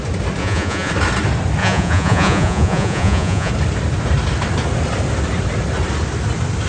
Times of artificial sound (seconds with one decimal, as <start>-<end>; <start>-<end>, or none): 0.4-0.9; 1.6-3.5